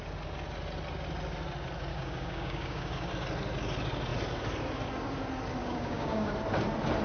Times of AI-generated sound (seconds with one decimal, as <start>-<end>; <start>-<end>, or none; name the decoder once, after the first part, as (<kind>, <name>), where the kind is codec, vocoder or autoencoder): 1.9-3.1 (codec, DAC); 5.6-6.3

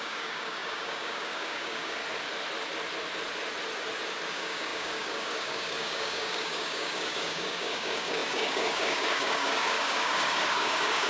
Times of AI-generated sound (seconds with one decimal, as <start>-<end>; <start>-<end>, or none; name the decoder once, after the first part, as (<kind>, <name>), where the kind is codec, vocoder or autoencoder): 0.0-2.0 (codec, DAC); 4.3-11.1

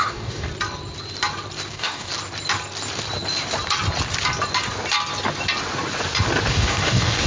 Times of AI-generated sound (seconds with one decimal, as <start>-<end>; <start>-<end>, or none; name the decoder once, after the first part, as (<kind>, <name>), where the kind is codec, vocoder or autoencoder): 0.0-0.5 (codec, DAC); 1.7-2.1; 6.5-7.3